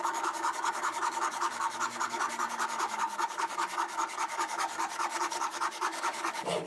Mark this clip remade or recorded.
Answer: remade